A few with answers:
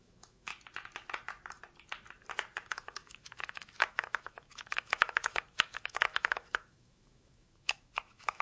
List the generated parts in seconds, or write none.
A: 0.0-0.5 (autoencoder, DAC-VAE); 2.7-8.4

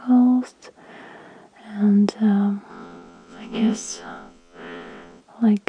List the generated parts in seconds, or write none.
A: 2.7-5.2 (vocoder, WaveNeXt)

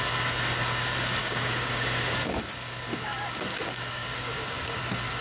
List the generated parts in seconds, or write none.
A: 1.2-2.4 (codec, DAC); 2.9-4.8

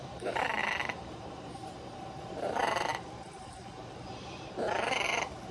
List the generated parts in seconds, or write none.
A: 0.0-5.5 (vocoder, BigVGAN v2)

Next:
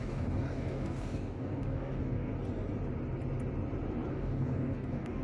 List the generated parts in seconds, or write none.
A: 0.0-2.3 (codec, DAC); 4.1-5.2

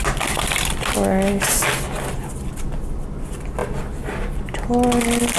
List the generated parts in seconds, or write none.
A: none

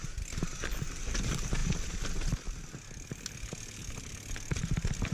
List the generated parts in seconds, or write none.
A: none

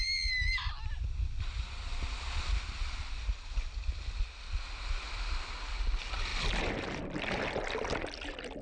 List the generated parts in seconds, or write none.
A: none